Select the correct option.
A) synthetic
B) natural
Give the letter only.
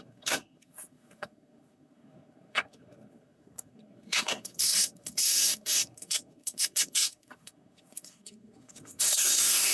A